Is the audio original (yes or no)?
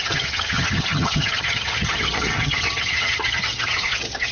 no